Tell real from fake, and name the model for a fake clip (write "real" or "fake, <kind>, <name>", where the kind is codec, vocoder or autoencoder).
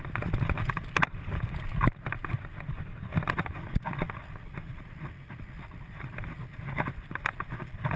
real